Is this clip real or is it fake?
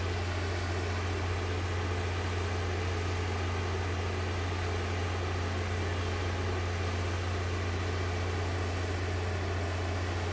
real